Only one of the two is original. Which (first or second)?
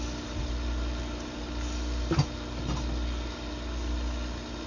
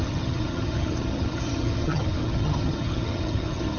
first